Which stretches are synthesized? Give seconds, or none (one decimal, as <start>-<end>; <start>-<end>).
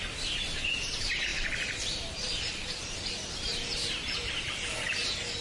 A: 1.3-4.5